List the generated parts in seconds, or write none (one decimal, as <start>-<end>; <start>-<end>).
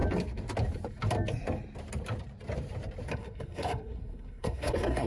3.1-5.1